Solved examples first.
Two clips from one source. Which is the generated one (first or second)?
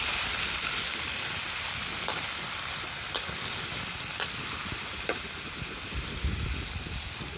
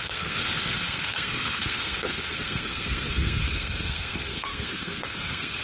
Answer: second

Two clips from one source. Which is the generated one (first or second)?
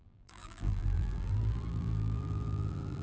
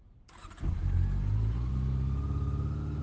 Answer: first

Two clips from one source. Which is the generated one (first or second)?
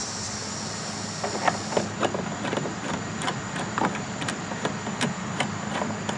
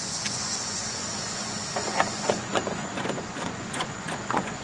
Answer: second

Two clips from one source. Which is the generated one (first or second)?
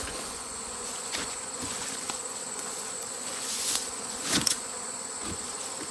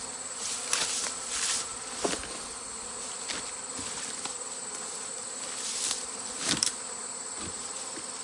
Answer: first